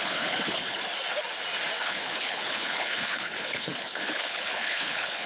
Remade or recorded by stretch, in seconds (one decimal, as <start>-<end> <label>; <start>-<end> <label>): 0.0-0.8 remade; 0.8-1.8 recorded; 1.8-5.3 remade